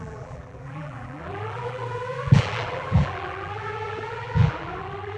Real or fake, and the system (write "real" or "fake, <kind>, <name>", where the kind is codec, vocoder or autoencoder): fake, vocoder, BigVGAN v2